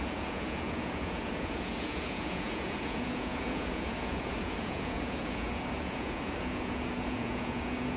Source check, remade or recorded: remade